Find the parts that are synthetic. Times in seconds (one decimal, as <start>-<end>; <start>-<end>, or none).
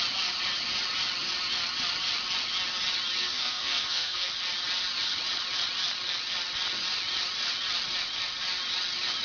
3.2-4.3